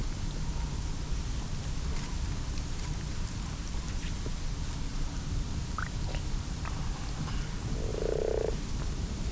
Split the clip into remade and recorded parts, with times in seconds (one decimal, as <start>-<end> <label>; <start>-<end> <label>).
0.0-4.9 recorded; 4.9-6.7 remade; 6.7-7.9 recorded; 7.9-9.3 remade